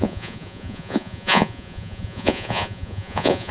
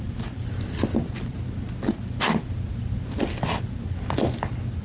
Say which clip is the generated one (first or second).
first